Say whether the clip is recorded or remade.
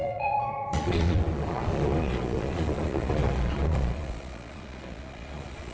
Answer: remade